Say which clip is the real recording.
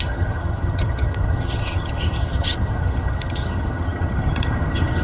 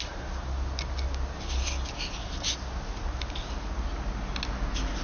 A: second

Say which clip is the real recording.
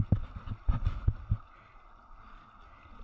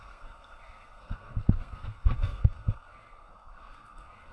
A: first